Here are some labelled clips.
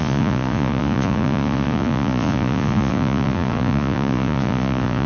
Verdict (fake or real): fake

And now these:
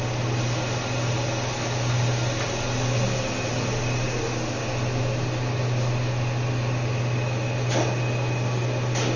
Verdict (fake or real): real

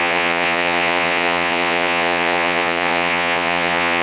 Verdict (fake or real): fake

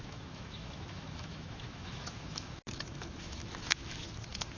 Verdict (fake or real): fake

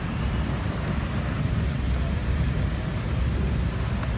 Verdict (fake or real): fake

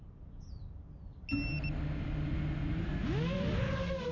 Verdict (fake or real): real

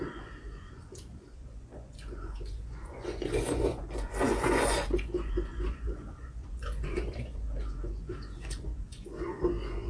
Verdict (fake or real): fake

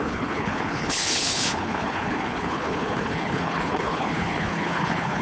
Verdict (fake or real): fake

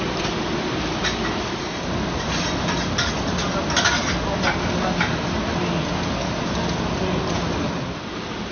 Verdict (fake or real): real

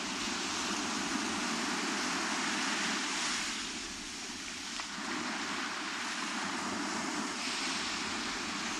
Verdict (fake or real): fake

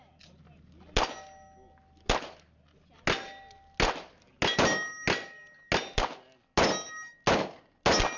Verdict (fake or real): real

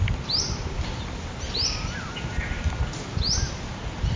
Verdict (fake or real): real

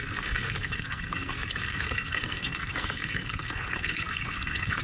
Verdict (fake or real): fake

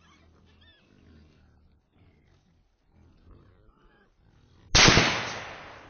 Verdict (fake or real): real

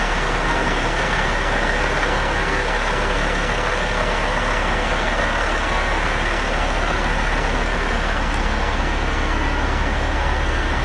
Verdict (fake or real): fake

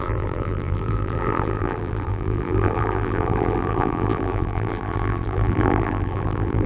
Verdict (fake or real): fake